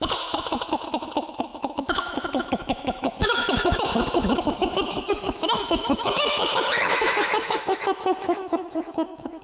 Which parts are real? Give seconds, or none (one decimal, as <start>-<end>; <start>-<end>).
none